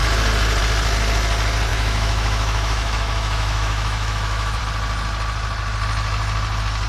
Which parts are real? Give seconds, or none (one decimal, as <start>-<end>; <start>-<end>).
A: 0.0-1.7; 4.6-6.9